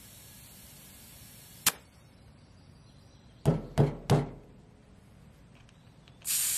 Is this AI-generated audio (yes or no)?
no